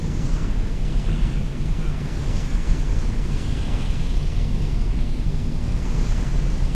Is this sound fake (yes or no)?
yes